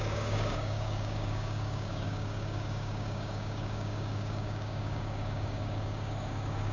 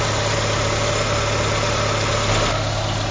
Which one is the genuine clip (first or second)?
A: second